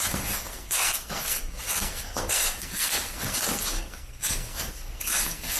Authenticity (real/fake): fake